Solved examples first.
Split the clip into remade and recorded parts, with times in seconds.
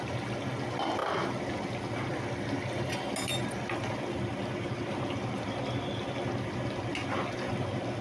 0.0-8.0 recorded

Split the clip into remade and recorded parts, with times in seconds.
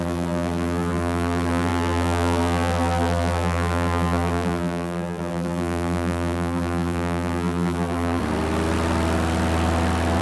0.0-8.2 remade; 8.2-10.2 recorded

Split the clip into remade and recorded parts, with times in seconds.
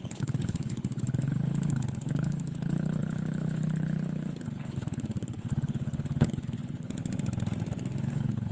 0.0-7.0 remade; 7.0-8.0 recorded; 8.0-8.5 remade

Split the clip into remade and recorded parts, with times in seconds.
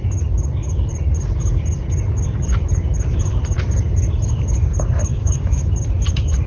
0.0-5.1 recorded; 5.1-5.7 remade; 5.7-6.5 recorded